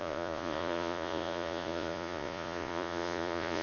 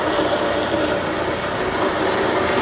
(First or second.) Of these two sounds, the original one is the second